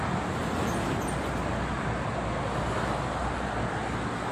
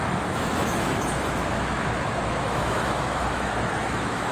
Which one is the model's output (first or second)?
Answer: second